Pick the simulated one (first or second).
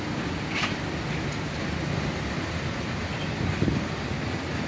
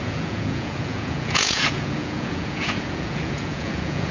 second